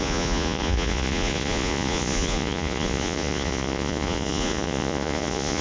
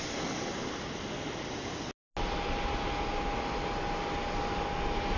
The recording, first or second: second